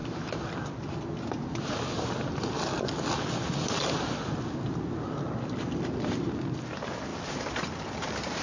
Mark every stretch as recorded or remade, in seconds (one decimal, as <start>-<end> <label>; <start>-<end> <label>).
0.0-8.4 recorded